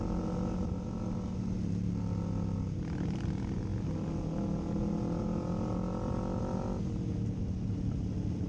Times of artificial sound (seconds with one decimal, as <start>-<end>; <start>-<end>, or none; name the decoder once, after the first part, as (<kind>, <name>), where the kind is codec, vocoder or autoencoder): none